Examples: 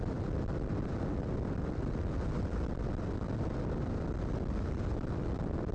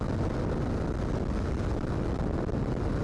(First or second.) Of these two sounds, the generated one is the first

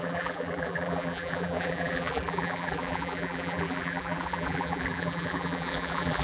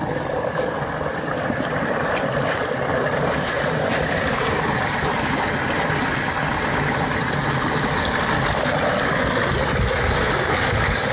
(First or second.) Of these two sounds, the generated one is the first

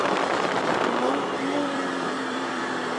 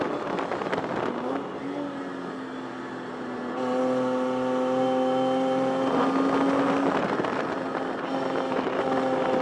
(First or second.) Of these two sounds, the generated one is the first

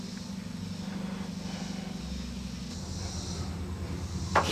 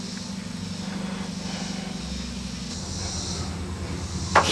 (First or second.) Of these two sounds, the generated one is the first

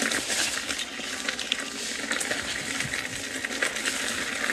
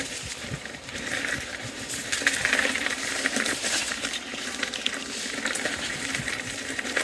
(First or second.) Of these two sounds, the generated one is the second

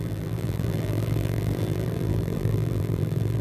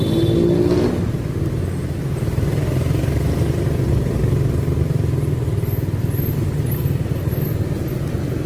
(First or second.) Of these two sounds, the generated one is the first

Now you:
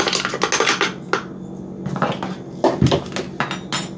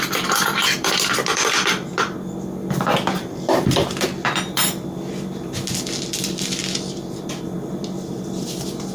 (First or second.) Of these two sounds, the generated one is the second